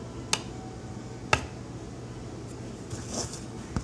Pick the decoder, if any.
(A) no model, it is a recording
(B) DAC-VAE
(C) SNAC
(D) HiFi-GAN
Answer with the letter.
A